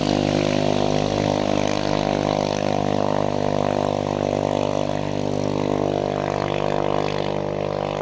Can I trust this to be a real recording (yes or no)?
yes